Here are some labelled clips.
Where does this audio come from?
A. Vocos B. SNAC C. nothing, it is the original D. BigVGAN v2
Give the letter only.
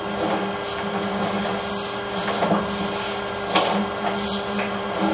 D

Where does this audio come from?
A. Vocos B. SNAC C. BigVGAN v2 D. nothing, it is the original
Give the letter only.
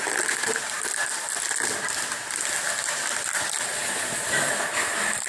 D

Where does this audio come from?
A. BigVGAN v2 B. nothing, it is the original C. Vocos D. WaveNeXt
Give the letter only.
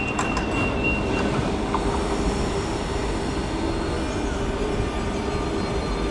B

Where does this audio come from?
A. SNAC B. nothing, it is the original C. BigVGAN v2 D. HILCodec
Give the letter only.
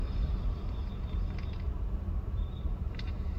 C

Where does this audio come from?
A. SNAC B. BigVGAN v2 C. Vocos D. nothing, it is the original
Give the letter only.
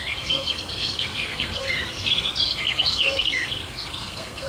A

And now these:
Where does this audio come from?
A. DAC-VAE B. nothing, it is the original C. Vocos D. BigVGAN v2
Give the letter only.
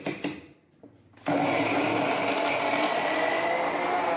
B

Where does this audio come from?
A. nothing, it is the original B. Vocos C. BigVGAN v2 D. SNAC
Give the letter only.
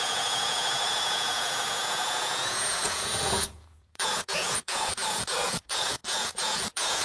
B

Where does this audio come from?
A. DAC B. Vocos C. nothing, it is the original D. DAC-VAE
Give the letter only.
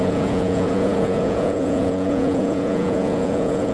B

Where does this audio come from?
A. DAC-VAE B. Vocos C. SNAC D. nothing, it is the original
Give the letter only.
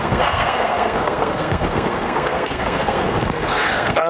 C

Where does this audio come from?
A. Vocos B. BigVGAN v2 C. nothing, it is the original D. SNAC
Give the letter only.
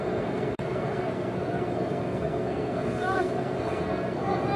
D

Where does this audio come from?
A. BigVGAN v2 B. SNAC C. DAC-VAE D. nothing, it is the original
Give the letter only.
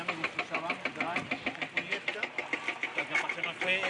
D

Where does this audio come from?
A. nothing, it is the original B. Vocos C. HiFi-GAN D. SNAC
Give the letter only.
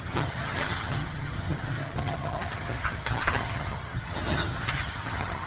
C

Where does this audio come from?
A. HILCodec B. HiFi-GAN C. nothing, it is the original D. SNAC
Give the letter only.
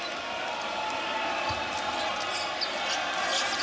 C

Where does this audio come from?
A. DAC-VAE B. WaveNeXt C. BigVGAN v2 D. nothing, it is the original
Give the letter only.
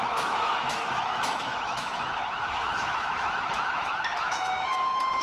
A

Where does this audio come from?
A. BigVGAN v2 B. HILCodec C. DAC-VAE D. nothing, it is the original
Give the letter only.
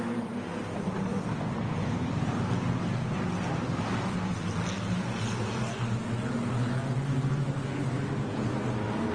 D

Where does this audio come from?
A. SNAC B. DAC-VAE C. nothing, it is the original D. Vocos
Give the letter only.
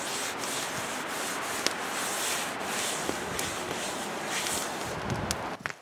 C